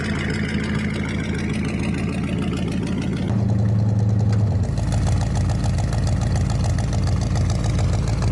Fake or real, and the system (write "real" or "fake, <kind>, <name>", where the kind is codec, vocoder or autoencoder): real